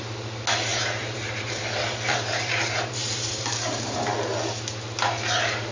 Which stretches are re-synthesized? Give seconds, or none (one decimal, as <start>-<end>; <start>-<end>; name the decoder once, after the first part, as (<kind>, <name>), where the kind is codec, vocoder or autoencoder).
0.7-4.1 (vocoder, BigVGAN v2)